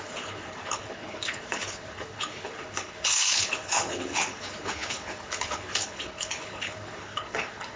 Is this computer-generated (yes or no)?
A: yes